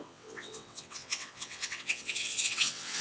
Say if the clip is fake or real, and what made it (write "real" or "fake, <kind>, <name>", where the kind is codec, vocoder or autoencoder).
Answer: fake, vocoder, WaveNeXt